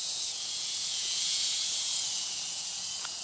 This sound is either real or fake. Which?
fake